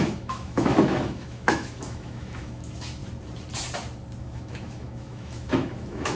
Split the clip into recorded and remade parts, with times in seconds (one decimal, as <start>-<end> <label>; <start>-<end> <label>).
0.0-3.0 remade; 3.0-4.2 recorded; 4.2-6.2 remade